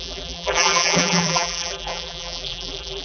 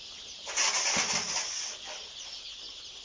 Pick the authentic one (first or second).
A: second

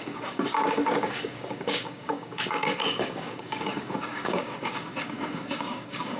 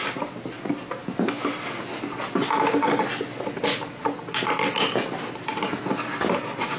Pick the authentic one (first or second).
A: second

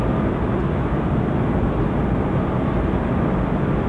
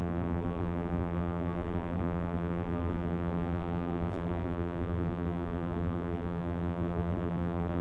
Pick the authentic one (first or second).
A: first